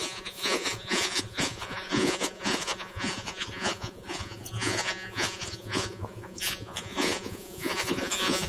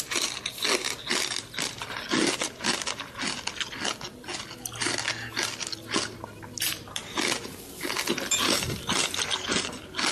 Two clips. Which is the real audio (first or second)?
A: second